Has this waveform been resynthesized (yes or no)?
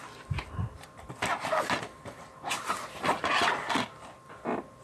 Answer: no